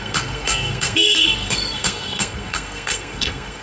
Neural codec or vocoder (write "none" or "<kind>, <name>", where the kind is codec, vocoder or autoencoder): codec, SNAC